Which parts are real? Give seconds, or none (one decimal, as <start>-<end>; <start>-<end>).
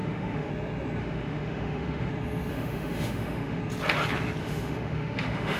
0.5-1.0; 2.1-2.5; 3.6-4.4